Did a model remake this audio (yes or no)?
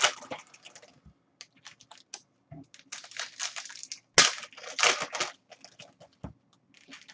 no